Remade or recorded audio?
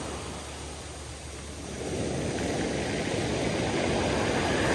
recorded